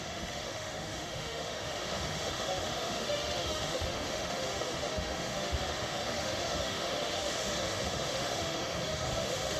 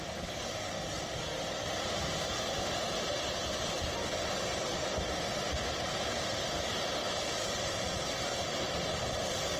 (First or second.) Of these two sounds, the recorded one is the second